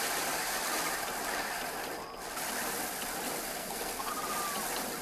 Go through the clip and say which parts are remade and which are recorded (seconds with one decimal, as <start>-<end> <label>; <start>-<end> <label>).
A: 0.0-3.5 recorded; 3.5-4.1 remade; 4.1-5.0 recorded

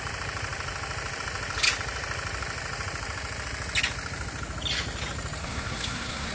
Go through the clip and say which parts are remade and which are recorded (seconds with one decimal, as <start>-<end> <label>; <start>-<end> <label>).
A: 0.0-5.4 recorded; 5.4-6.3 remade